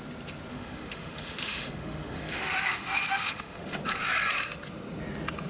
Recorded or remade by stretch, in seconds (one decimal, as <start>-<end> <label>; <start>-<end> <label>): 0.0-0.5 recorded; 0.5-3.8 remade; 3.8-5.5 recorded